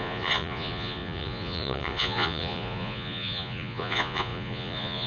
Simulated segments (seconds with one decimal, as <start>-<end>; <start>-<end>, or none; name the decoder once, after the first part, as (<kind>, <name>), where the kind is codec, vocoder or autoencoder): 0.0-5.1 (vocoder, Vocos)